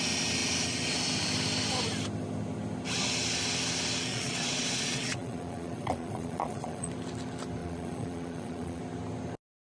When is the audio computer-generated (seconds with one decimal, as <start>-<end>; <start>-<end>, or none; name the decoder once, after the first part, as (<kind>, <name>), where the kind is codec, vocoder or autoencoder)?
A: 4.1-6.9 (vocoder, Vocos); 7.6-8.8